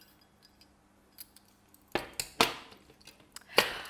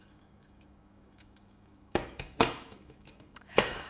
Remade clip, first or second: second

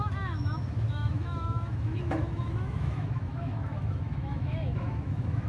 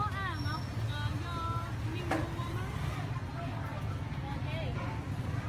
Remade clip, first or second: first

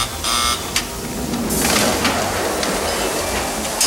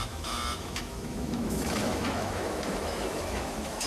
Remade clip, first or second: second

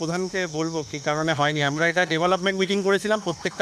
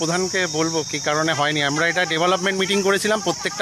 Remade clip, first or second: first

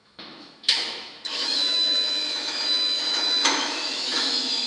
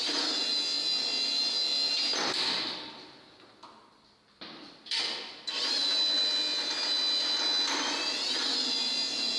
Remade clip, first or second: first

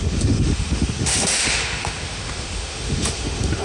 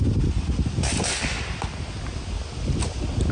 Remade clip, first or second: first